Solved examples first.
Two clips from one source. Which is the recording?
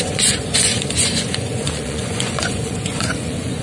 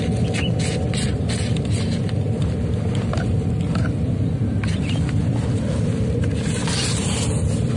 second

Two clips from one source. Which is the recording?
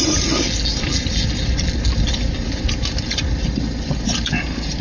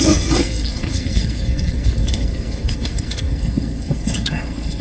first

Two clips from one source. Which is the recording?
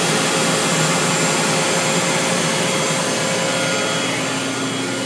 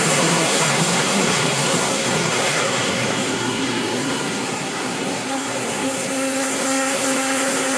first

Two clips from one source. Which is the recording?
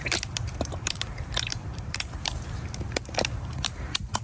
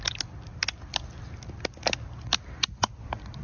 second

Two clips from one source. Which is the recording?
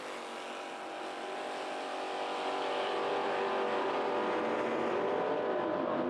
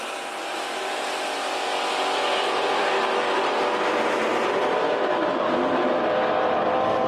first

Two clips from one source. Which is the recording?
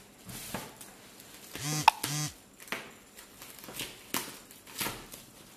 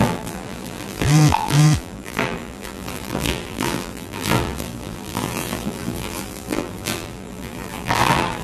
first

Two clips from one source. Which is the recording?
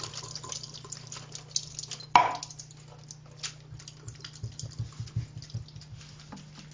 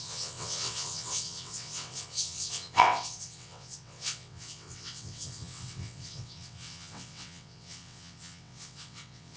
first